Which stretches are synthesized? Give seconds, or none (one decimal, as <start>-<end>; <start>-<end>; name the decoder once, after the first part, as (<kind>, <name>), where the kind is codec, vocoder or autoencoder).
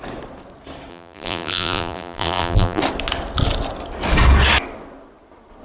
0.9-2.8 (vocoder, BigVGAN v2)